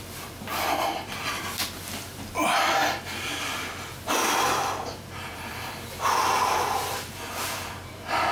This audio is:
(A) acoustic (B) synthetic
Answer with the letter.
B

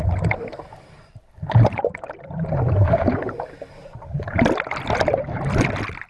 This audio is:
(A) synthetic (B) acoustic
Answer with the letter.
A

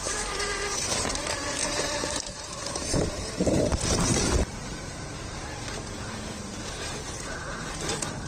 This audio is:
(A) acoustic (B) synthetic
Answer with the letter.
B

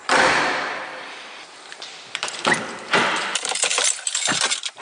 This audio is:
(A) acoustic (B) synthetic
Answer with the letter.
B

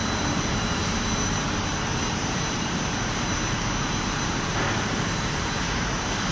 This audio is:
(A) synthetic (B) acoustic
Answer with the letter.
A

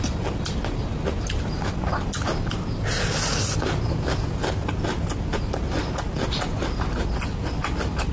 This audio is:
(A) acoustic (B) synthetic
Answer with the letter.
A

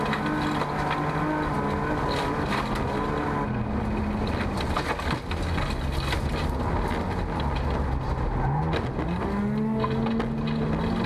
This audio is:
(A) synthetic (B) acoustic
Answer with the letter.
B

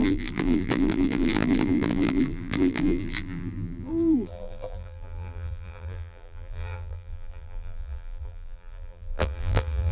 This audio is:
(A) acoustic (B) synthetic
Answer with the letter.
B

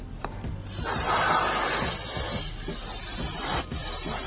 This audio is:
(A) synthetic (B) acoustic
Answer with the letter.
A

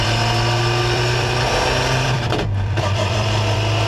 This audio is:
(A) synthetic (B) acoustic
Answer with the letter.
A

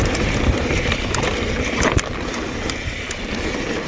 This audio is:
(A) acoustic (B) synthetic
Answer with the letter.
B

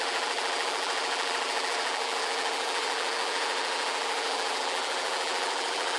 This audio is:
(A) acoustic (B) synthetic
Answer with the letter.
B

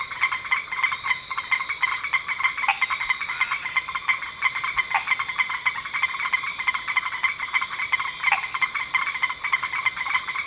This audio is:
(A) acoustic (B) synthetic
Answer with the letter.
A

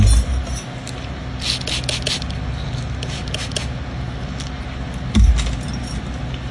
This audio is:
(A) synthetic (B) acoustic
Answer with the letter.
B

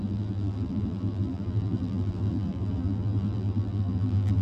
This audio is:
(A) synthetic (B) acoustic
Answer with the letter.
A